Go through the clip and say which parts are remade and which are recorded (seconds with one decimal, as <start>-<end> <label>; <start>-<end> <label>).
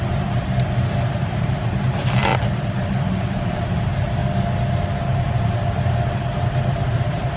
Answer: 0.0-2.3 remade; 2.3-2.9 recorded; 2.9-4.2 remade; 4.2-4.8 recorded; 4.8-7.4 remade